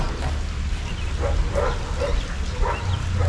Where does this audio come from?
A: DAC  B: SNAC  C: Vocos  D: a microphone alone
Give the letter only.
D